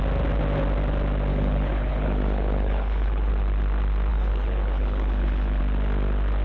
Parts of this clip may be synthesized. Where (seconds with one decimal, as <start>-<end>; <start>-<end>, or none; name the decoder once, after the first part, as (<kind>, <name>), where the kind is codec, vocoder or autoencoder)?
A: 1.3-3.3 (codec, HILCodec); 4.1-5.6